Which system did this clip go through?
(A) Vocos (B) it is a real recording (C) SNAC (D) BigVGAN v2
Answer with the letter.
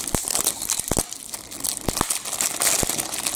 B